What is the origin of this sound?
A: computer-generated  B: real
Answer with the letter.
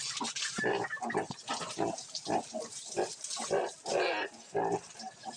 B